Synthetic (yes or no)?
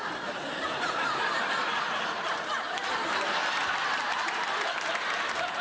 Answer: no